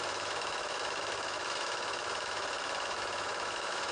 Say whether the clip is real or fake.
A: fake